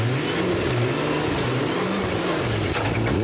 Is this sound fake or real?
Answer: real